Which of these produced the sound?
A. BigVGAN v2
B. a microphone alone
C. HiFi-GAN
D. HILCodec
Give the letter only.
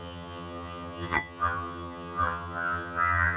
C